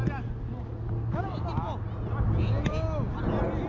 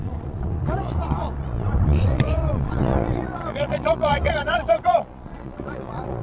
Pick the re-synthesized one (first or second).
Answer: second